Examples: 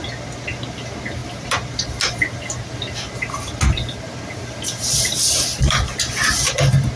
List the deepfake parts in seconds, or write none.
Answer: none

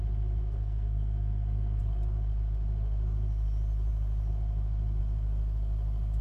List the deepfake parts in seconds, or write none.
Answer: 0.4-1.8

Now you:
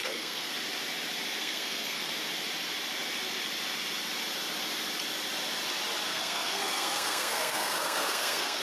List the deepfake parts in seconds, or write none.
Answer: 0.0-0.5; 1.4-2.1; 6.1-8.6

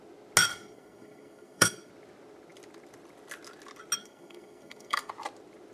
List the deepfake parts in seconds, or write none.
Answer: 0.5-1.9; 4.0-5.1

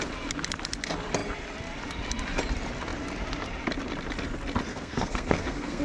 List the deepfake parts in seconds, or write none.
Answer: 4.7-5.8

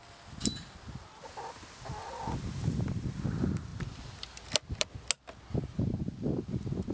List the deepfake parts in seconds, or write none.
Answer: none

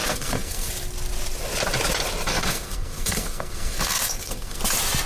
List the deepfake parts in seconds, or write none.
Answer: 0.0-0.7; 2.3-4.6